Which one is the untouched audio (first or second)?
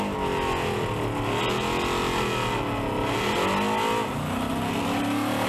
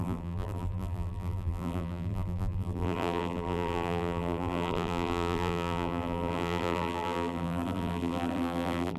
first